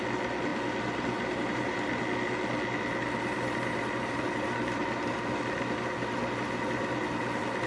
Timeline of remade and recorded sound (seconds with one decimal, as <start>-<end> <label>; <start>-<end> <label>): 0.0-7.7 recorded